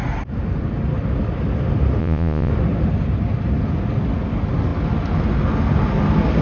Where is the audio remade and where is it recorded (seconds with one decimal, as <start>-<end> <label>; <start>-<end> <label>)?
0.0-2.0 recorded; 2.0-2.5 remade; 2.5-6.4 recorded